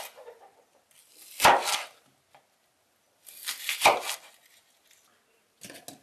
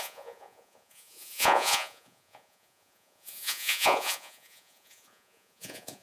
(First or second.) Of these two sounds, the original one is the first